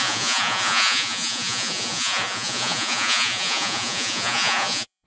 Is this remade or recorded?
remade